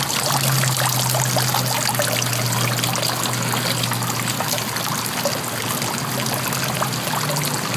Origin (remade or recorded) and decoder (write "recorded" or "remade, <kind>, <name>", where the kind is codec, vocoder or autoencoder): recorded